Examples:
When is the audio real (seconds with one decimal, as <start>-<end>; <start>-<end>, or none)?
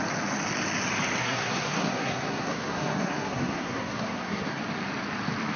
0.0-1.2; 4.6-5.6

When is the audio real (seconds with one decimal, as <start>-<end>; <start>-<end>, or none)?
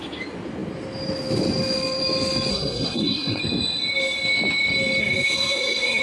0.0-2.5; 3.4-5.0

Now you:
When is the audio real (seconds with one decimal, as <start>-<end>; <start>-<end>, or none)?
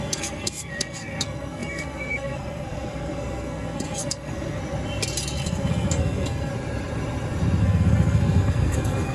4.6-5.4; 6.5-7.6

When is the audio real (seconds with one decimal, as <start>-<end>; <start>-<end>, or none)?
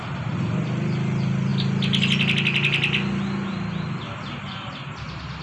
0.0-5.4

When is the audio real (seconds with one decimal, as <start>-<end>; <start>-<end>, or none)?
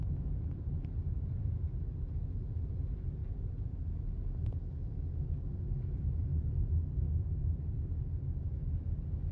0.0-9.3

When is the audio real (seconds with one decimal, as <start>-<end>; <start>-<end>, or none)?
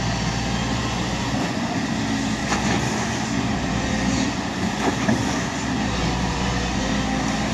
0.0-0.6; 1.9-2.4; 6.9-7.5